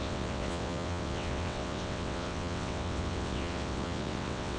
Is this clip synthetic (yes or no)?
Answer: yes